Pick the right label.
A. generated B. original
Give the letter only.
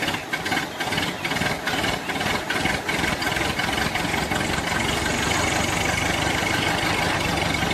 B